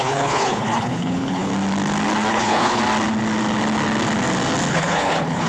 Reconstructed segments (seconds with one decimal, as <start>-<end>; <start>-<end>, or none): 0.0-1.5; 2.3-2.8; 4.7-5.5